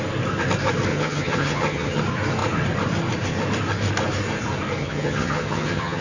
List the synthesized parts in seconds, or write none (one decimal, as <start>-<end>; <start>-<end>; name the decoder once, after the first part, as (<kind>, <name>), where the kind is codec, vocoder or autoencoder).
0.9-2.0 (vocoder, HiFi-GAN); 4.8-6.0